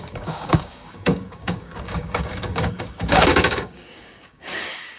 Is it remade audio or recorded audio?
remade